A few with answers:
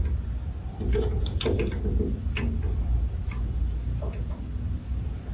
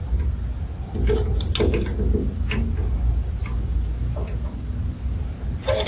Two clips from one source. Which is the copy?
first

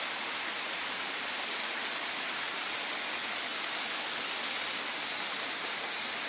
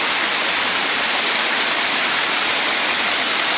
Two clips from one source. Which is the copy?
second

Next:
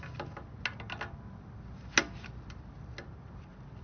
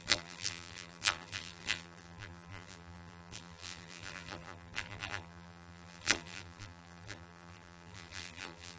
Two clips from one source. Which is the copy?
second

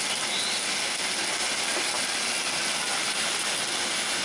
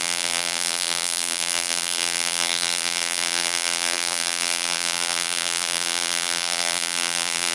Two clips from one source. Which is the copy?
second